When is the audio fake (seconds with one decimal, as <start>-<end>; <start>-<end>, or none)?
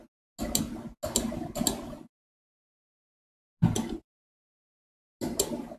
none